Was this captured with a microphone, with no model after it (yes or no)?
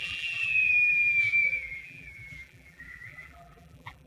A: no